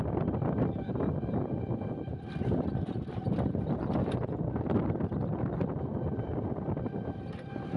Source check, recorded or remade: recorded